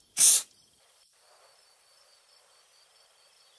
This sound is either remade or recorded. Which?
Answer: remade